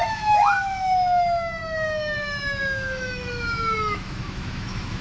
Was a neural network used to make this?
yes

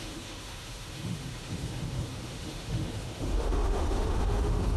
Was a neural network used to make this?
yes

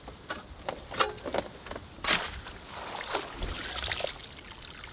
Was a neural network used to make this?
no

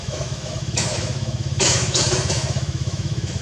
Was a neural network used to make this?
yes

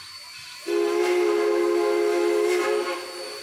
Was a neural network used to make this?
no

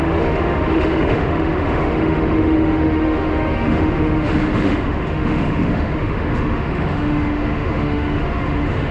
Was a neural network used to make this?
yes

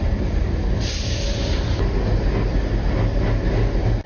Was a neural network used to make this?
no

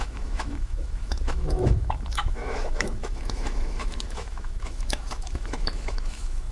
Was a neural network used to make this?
yes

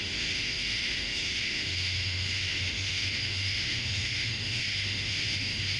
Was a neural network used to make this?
yes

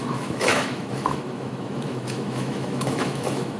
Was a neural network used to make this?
yes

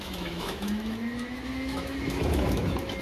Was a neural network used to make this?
yes